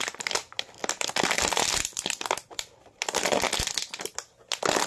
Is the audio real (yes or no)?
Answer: yes